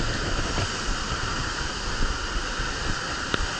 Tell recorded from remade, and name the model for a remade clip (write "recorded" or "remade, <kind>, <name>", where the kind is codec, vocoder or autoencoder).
remade, vocoder, BigVGAN v2